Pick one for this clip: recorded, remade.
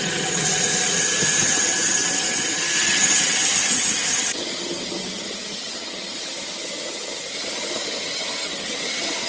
remade